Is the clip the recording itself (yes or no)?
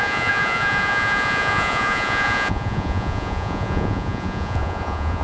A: no